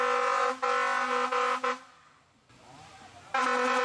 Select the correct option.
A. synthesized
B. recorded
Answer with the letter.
B